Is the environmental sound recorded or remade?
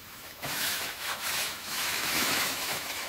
remade